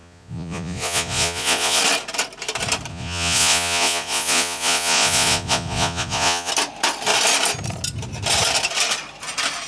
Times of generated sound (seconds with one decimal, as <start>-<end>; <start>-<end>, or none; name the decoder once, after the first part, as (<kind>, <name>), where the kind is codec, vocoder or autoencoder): 0.0-1.8 (vocoder, Vocos); 2.9-6.5